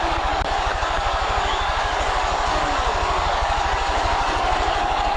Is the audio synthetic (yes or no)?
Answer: yes